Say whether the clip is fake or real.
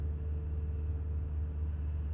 real